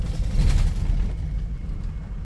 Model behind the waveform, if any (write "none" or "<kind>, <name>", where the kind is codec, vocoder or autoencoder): none